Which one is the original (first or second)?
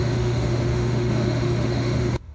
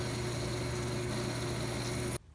second